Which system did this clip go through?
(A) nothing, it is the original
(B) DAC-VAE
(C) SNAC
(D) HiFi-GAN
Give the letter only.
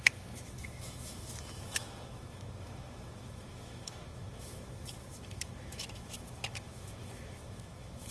B